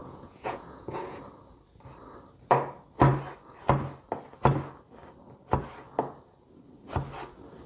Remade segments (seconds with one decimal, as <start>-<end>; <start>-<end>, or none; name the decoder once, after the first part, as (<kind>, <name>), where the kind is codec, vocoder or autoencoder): 0.0-1.2 (vocoder, Vocos)